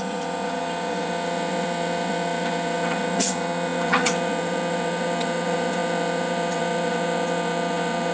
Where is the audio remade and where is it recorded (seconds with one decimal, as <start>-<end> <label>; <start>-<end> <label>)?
0.0-8.1 remade